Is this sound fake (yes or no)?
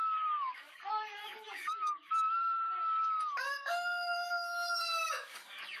yes